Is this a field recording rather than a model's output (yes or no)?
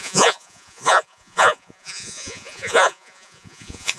no